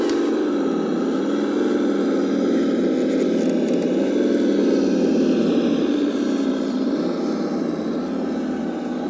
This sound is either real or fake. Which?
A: real